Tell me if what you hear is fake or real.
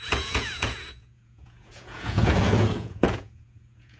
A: fake